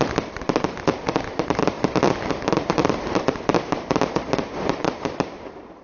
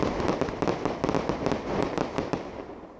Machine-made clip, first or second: first